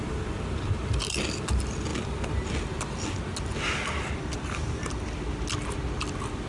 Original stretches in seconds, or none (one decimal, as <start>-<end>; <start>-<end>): 0.0-6.5